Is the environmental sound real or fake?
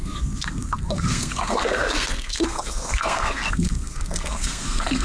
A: fake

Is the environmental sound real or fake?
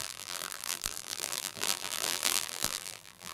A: fake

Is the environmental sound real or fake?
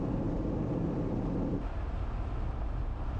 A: real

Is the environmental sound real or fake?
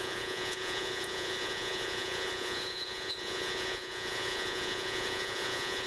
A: fake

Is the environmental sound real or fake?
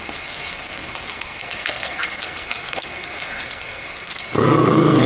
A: fake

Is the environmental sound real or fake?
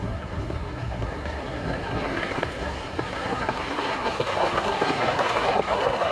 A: fake